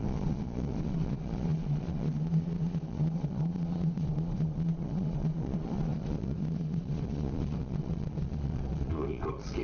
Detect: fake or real fake